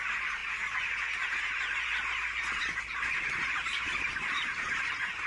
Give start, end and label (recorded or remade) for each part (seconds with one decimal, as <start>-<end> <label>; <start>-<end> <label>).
0.0-5.3 recorded